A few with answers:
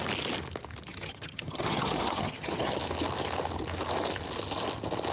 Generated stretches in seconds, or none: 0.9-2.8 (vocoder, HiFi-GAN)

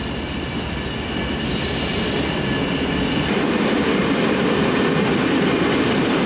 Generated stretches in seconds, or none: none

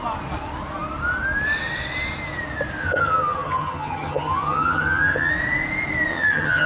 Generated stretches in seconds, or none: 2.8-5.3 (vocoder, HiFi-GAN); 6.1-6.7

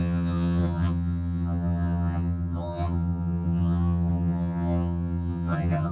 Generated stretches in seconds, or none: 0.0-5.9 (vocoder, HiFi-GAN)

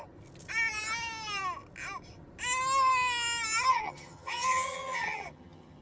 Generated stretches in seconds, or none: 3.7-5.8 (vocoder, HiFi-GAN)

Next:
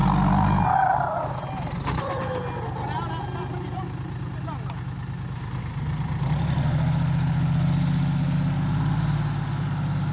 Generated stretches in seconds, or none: none

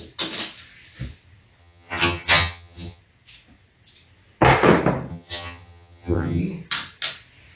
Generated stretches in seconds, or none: 1.6-3.0 (vocoder, HiFi-GAN); 5.1-6.4

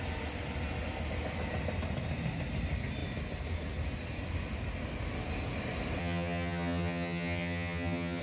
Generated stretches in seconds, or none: 6.0-8.2 (vocoder, HiFi-GAN)